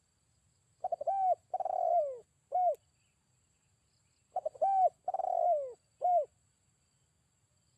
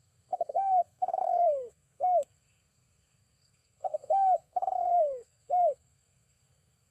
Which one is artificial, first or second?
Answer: second